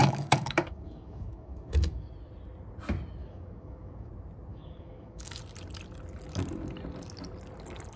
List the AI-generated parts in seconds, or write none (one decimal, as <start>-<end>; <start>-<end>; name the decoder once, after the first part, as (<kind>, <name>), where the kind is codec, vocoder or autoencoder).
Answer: 0.0-2.1 (codec, DAC); 3.2-4.1; 4.5-5.4